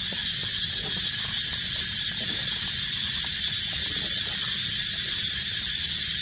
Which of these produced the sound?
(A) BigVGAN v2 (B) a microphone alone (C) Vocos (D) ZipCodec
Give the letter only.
B